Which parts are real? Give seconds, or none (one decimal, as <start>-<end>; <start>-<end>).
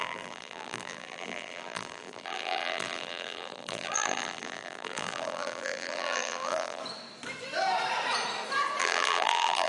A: 6.8-8.8